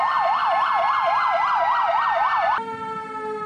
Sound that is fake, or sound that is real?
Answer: real